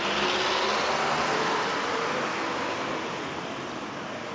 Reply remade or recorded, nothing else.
recorded